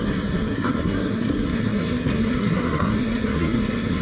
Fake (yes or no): yes